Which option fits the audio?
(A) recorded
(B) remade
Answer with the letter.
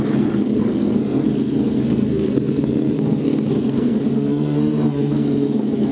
B